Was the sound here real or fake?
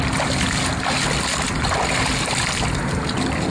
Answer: real